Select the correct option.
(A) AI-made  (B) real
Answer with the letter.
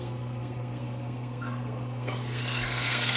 A